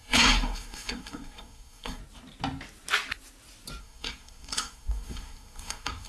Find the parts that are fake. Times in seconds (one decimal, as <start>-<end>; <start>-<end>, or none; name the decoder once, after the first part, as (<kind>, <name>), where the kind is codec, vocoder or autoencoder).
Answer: 0.0-2.0 (codec, SNAC); 3.8-6.1